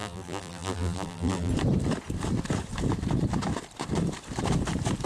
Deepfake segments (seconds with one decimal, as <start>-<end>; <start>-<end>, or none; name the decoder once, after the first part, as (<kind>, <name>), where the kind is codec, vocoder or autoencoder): 0.0-1.5 (vocoder, BigVGAN v2)